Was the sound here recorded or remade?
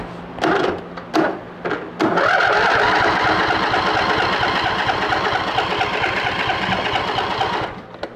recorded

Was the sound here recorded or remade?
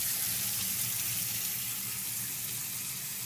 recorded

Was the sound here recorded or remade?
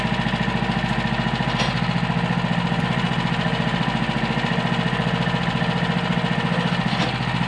recorded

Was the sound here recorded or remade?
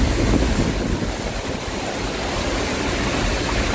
recorded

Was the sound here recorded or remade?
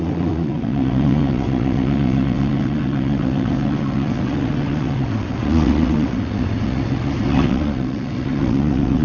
remade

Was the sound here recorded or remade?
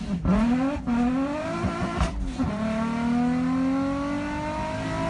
recorded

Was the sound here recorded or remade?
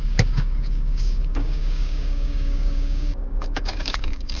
remade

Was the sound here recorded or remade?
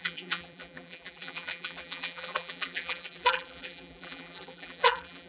remade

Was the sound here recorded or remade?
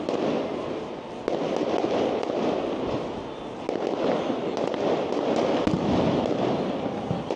recorded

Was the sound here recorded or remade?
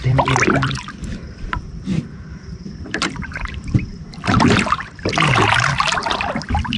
remade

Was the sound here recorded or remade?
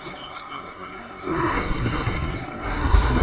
remade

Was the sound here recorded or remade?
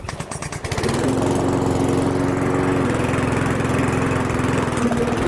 recorded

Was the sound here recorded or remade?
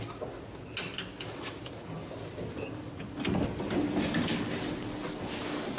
recorded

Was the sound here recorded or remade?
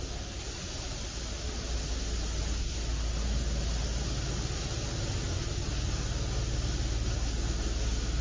recorded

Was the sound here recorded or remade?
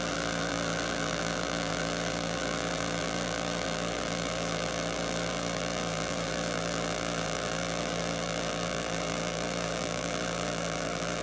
remade